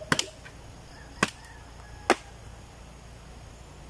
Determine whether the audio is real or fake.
real